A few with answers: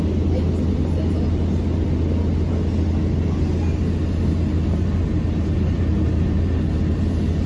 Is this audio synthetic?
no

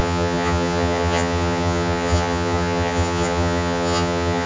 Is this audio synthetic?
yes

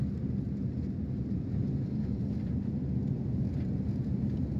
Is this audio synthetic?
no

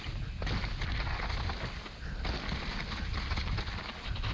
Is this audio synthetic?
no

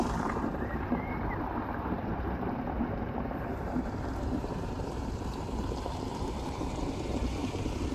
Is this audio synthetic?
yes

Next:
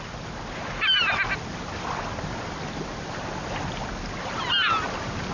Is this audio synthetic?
no